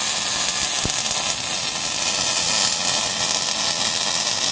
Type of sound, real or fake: real